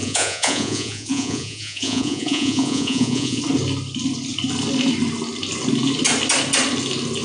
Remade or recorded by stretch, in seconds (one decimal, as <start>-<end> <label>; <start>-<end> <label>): 0.0-3.4 remade; 3.4-7.2 recorded